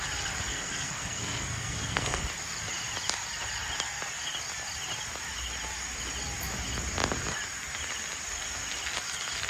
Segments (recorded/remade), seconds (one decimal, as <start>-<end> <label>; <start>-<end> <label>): 0.0-0.5 recorded; 0.5-2.2 remade; 2.2-9.5 recorded